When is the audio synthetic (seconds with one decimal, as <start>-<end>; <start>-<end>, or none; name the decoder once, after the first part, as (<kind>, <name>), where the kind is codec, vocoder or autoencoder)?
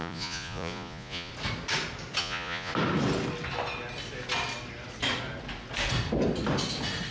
0.0-1.3 (vocoder, Vocos); 2.2-2.7